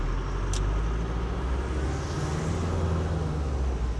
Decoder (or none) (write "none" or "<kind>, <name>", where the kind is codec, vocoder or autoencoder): none